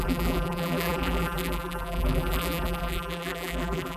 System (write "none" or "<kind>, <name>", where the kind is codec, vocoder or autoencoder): vocoder, BigVGAN v2